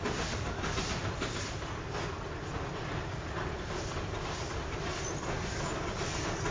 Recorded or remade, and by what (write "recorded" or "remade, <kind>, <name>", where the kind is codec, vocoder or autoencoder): recorded